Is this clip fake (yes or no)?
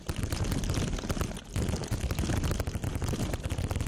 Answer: no